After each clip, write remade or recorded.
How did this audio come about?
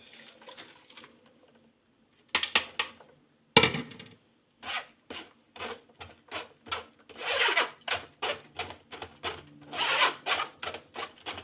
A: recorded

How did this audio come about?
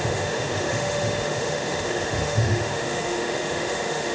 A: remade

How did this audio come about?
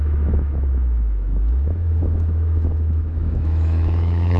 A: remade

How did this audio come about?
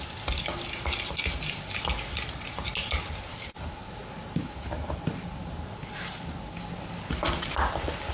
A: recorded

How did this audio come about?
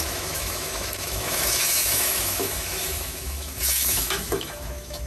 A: remade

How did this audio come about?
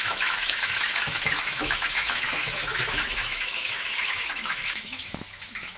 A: remade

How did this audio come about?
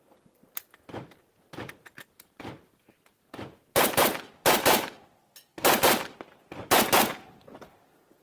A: recorded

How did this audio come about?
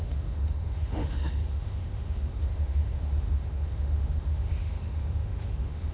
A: remade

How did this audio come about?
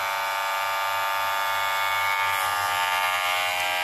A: recorded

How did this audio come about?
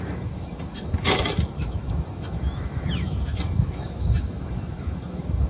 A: remade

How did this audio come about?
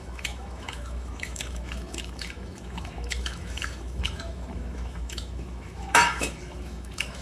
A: remade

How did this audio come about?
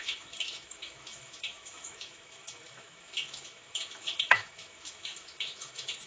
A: remade